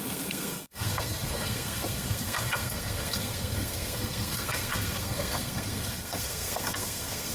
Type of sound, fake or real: fake